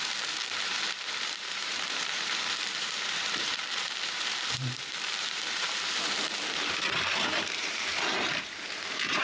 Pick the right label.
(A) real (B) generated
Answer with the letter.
B